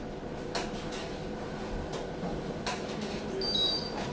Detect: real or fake real